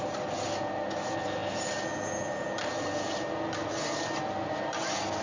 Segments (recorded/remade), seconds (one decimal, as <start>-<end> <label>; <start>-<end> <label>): 0.0-5.2 recorded